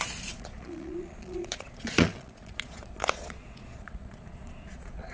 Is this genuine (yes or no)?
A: no